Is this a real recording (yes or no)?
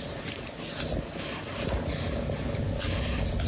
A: yes